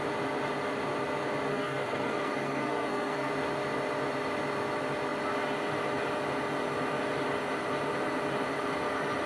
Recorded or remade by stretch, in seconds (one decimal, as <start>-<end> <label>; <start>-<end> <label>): 0.0-1.5 recorded; 1.5-3.3 remade; 3.3-9.3 recorded